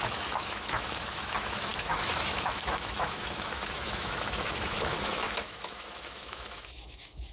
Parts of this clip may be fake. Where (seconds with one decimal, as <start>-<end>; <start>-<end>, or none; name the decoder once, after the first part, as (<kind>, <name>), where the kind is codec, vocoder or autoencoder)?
0.0-7.3 (autoencoder, DAC-VAE)